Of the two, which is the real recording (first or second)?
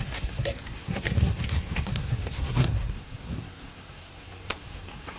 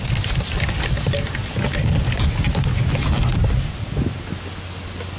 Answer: second